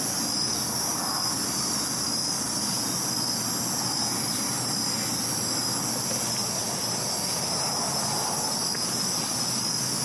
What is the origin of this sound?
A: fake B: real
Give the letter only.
B